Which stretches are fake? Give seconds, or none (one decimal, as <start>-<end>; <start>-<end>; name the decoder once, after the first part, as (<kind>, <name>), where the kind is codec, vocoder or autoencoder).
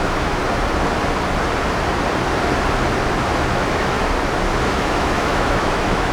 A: 0.0-0.4 (autoencoder, DAC-VAE); 3.5-4.0; 4.6-6.1